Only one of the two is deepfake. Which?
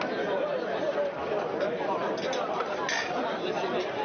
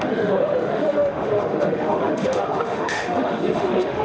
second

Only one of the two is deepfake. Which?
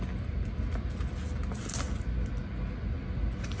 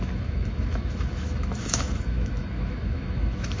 second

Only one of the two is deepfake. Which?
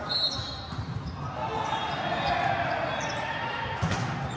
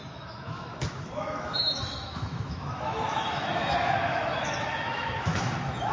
second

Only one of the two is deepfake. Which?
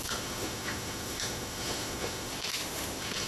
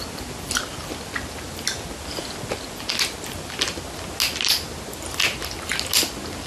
first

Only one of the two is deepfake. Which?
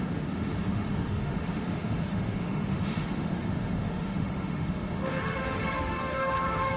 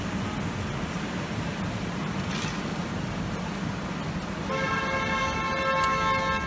first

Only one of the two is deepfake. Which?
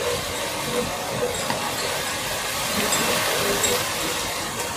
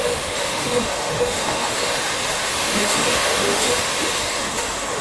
second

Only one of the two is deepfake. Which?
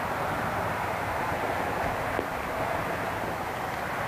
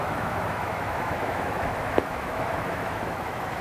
second